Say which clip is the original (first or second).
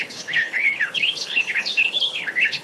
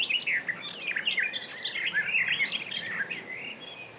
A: second